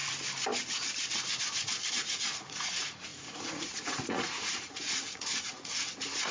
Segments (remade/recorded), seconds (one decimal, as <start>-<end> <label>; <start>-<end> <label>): 0.0-1.9 recorded; 1.9-6.3 remade